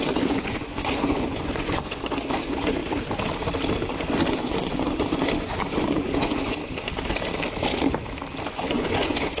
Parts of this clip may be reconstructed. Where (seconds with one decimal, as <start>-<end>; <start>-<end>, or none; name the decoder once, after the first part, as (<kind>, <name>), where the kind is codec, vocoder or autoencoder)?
0.0-2.8 (vocoder, Vocos); 4.3-6.6; 8.5-9.4